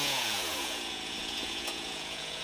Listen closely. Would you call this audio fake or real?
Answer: fake